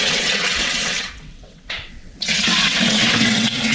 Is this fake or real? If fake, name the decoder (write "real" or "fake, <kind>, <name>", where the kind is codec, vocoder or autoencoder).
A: fake, vocoder, WaveNeXt